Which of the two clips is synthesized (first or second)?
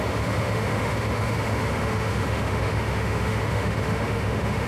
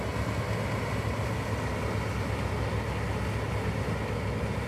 first